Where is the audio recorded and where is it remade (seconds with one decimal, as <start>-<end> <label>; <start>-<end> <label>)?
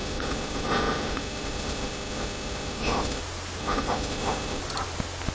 0.0-3.2 remade; 3.2-3.6 recorded; 3.6-4.6 remade; 4.6-5.3 recorded